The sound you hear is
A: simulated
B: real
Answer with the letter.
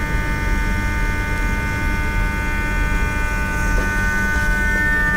B